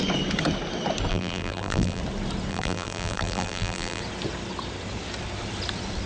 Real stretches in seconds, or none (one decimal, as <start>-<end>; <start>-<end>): 0.0-1.1; 2.0-2.5; 4.0-6.1